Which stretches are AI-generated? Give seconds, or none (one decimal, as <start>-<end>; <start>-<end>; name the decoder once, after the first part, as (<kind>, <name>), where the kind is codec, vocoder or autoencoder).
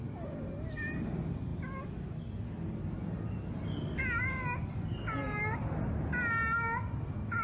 none